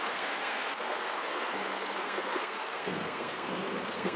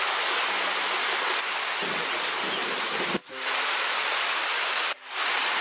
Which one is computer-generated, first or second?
first